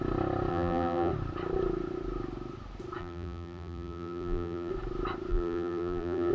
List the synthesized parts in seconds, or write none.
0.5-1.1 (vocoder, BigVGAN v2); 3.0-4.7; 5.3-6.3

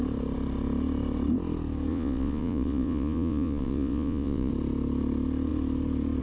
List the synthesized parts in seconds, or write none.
1.9-4.5 (vocoder, Vocos)

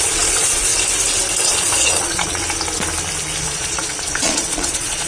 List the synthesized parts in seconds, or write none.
0.0-0.7 (vocoder, Vocos); 1.4-2.4; 3.4-5.1

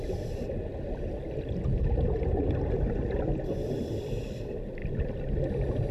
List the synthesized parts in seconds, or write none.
none

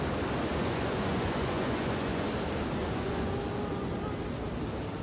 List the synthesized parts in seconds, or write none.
0.6-2.3 (vocoder, Vocos); 2.8-3.3

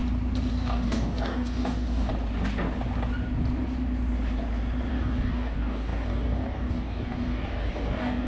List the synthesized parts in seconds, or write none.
0.5-2.1 (codec, DAC); 4.9-8.3